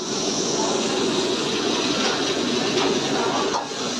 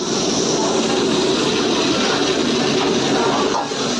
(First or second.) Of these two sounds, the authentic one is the second